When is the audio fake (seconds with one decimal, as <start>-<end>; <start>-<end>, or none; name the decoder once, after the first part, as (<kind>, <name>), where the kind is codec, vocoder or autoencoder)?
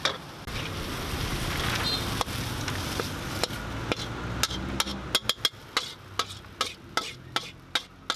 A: none